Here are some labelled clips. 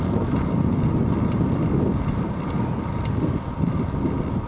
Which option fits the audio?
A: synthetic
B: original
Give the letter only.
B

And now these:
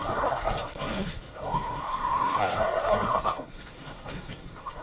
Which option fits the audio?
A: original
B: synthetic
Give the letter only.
B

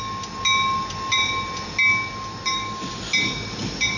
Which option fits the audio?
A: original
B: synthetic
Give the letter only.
A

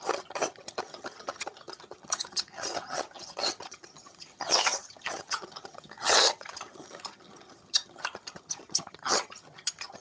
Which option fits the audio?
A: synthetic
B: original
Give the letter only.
A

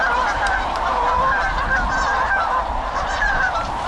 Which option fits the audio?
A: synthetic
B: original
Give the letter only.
A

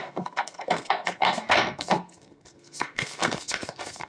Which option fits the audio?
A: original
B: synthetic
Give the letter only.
B